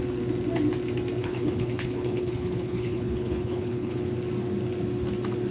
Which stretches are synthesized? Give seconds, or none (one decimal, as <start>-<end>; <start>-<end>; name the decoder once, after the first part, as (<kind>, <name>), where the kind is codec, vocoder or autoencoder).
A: 1.2-4.0 (codec, HILCodec)